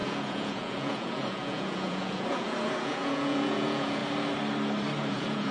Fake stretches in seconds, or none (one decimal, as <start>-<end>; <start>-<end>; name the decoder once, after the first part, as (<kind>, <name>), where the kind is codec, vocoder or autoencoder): 0.0-4.0 (vocoder, Vocos); 5.1-5.5